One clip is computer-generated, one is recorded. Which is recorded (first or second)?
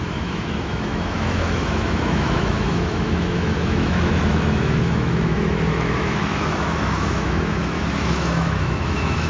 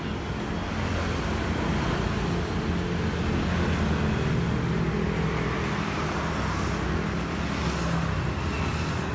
second